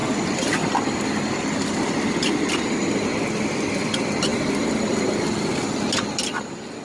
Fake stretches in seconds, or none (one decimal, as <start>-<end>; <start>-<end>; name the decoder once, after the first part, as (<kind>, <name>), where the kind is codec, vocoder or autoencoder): none